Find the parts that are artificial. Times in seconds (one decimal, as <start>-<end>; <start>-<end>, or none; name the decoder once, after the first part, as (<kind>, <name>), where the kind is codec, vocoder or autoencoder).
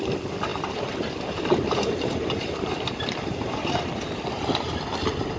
0.5-3.7 (vocoder, BigVGAN v2)